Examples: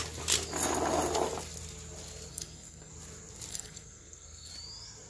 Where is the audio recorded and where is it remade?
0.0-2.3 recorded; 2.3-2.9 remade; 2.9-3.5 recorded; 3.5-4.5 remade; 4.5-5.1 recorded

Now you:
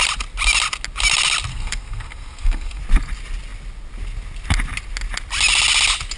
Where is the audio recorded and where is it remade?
0.0-1.5 recorded; 1.5-2.8 remade; 2.8-6.2 recorded

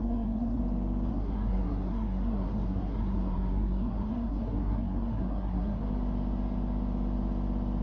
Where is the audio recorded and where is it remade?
0.0-0.6 remade; 0.6-1.1 recorded; 1.1-5.8 remade; 5.8-7.8 recorded

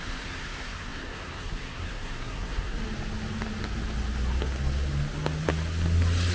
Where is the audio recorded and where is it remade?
0.0-2.8 remade; 2.8-6.3 recorded

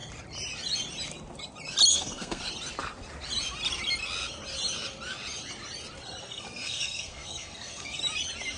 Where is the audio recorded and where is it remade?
0.0-1.9 recorded; 1.9-2.4 remade; 2.4-6.2 recorded; 6.2-8.0 remade; 8.0-8.6 recorded

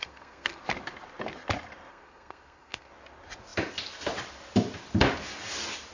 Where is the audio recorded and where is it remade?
0.0-0.6 remade; 0.6-1.9 recorded; 1.9-2.9 remade; 2.9-5.9 recorded

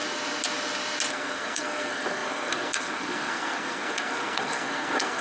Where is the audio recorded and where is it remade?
0.0-1.1 recorded; 1.1-5.2 remade

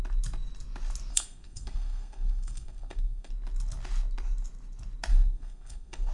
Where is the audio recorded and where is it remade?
0.0-1.1 recorded; 1.1-3.3 remade; 3.3-5.1 recorded; 5.1-6.1 remade